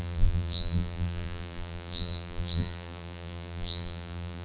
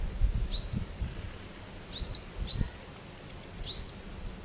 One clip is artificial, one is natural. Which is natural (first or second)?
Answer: second